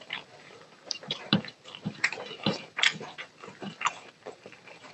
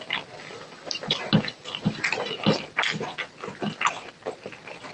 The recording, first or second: second